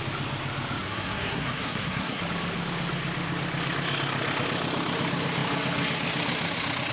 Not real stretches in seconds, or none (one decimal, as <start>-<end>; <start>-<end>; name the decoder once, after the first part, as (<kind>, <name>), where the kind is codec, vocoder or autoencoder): 0.8-2.2 (codec, SNAC)